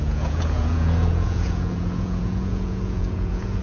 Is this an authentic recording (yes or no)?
no